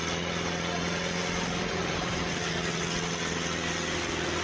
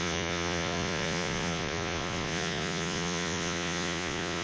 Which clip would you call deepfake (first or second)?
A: second